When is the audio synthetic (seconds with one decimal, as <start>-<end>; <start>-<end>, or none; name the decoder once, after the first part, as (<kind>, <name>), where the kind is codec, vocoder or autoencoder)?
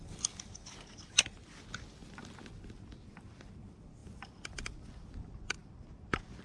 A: none